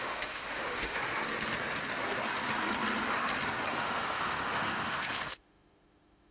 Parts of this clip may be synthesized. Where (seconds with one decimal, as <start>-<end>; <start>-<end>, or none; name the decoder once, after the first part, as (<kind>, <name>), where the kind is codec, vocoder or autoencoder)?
0.0-1.0 (autoencoder, DAC-VAE); 3.7-6.3